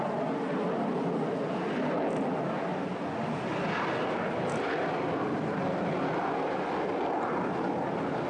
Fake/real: real